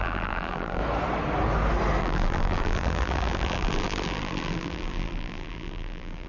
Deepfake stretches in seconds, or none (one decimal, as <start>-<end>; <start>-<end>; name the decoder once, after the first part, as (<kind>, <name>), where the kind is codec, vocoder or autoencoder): 0.0-0.8 (vocoder, BigVGAN v2); 2.0-6.3